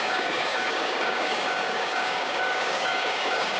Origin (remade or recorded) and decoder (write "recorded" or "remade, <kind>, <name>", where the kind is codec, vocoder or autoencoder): remade, codec, DAC